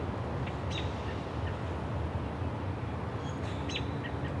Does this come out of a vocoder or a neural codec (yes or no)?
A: no